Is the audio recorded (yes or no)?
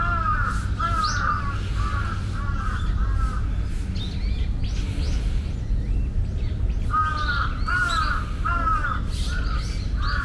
yes